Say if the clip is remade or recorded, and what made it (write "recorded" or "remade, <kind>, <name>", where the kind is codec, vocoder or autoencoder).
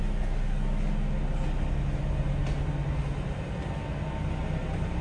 recorded